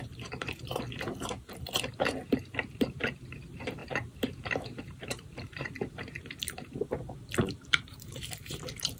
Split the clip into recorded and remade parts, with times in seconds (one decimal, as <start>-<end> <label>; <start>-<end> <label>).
0.0-9.0 remade